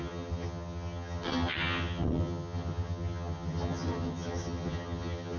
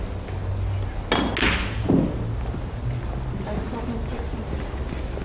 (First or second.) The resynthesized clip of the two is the first